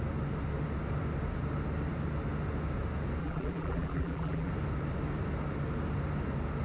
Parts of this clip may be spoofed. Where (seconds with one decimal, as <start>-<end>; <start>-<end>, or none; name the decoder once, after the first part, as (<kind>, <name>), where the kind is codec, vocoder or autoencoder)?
3.2-4.5 (vocoder, BigVGAN v2)